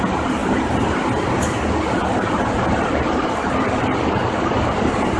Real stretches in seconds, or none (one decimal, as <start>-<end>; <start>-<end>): 0.0-5.2